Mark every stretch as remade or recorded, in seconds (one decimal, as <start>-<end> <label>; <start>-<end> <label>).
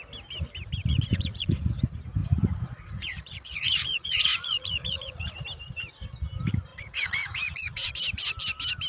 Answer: 0.0-0.9 recorded; 0.9-1.7 remade; 1.7-2.2 recorded; 2.2-5.4 remade; 5.4-6.7 recorded; 6.7-7.9 remade; 7.9-8.9 recorded